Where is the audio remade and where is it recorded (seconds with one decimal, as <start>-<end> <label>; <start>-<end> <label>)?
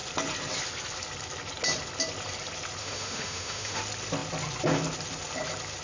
0.0-2.8 recorded; 2.8-3.8 remade; 3.8-5.8 recorded